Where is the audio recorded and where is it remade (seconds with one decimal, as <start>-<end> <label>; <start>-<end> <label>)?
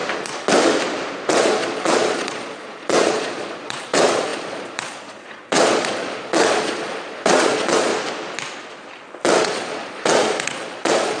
0.0-1.3 recorded; 1.3-7.9 remade; 7.9-9.4 recorded; 9.4-11.2 remade